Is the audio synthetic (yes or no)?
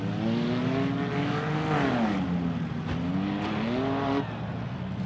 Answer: no